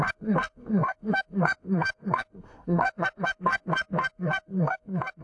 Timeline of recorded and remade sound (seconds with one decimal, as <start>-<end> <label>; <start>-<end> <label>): 0.0-5.2 remade